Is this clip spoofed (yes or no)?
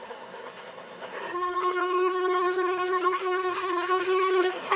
yes